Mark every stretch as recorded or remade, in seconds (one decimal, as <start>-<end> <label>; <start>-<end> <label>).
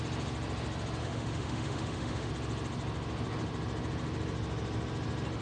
0.0-1.0 recorded; 1.0-2.3 remade; 2.3-5.4 recorded